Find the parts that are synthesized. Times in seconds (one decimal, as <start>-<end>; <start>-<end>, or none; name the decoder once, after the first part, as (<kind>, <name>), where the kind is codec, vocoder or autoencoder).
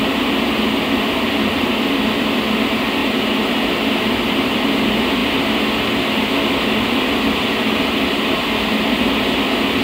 none